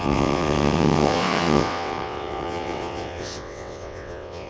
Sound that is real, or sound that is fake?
fake